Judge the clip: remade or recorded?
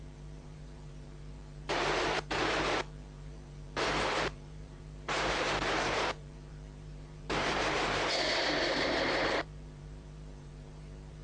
remade